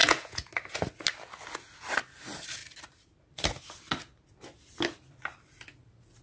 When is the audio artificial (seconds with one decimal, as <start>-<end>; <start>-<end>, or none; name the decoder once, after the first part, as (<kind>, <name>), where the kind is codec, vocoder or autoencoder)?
0.0-0.5 (vocoder, Vocos)